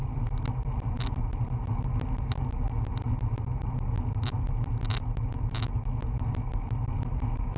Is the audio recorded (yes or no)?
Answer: yes